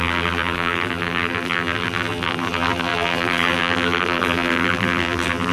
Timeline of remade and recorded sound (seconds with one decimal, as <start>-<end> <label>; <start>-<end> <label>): 0.0-5.5 remade